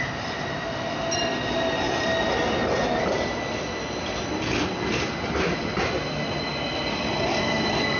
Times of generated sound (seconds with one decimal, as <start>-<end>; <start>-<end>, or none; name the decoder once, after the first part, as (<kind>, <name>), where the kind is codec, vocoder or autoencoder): none